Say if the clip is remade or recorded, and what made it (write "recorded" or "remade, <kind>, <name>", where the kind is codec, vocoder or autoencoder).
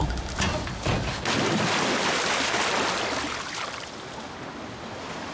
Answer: recorded